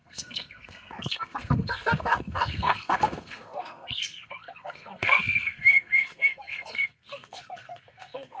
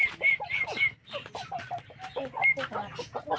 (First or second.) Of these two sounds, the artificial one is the first